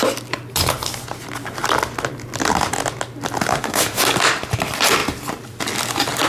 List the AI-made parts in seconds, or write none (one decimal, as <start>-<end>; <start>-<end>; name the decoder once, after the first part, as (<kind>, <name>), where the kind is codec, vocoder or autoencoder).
3.5-4.0 (autoencoder, DAC-VAE)